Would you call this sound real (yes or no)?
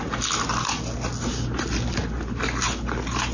yes